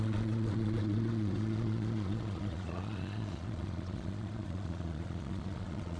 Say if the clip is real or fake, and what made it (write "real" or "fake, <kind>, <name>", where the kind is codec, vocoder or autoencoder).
fake, vocoder, Vocos